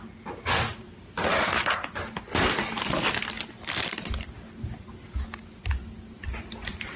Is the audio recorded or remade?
recorded